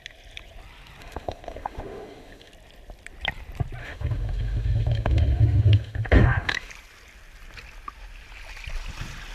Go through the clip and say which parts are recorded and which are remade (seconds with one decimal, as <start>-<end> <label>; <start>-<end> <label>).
0.0-1.0 recorded; 1.0-2.5 remade; 2.5-3.8 recorded; 3.8-6.7 remade; 6.7-9.3 recorded